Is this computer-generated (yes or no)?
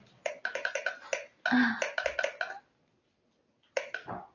no